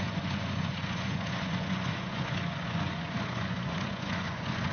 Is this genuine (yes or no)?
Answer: no